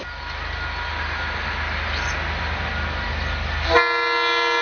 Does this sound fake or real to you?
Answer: real